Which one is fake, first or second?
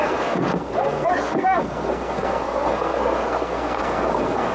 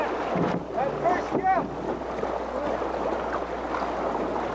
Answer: first